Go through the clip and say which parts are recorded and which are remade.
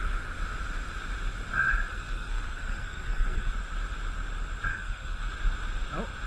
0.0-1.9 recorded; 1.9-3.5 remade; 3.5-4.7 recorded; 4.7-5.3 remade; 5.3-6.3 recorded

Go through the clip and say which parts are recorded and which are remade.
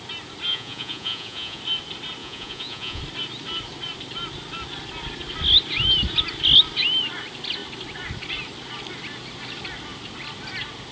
0.0-0.5 recorded; 0.5-1.6 remade; 1.6-2.2 recorded; 2.2-3.0 remade; 3.0-10.9 recorded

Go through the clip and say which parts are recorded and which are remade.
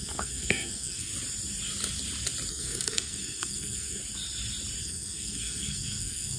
0.0-1.1 remade; 1.1-2.5 recorded; 2.5-4.0 remade; 4.0-4.8 recorded; 4.8-6.4 remade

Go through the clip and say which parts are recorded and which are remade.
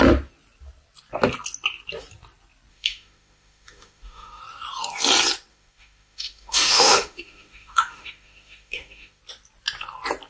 0.0-2.7 recorded; 2.7-4.4 remade; 4.4-5.5 recorded; 5.5-9.2 remade; 9.2-10.3 recorded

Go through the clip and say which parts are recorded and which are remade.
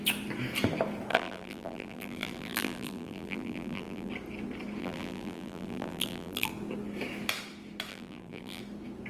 0.0-1.1 recorded; 1.1-4.1 remade; 4.1-4.8 recorded; 4.8-6.5 remade; 6.5-7.9 recorded; 7.9-8.6 remade; 8.6-9.1 recorded